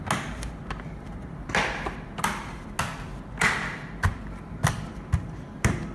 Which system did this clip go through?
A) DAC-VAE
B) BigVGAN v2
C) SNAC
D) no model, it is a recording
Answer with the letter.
D